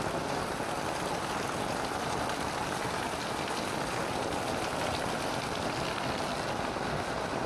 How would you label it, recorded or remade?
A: recorded